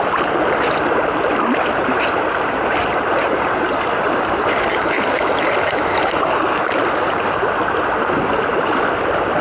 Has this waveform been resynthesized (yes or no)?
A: no